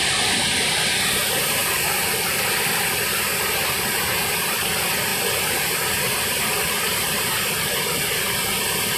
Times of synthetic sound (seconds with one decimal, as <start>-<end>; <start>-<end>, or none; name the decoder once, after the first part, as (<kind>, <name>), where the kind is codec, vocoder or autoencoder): none